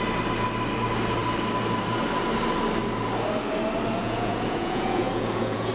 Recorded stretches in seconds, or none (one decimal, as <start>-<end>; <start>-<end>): 0.0-4.0